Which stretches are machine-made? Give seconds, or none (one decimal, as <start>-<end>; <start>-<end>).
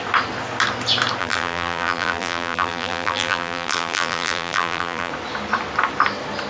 1.2-5.1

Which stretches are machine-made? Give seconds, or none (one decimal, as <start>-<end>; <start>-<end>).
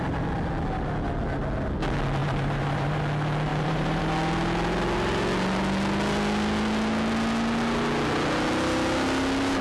2.2-3.0; 3.5-4.0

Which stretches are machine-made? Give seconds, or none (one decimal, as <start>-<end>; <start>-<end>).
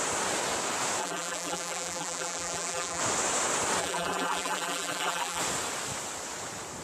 1.0-3.0; 3.8-5.4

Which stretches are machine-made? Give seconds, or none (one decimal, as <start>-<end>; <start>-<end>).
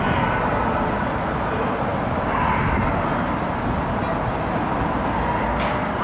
none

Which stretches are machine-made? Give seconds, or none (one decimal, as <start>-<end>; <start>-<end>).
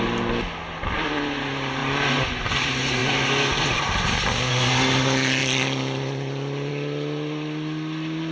none